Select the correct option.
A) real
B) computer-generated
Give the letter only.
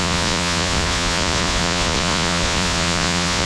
B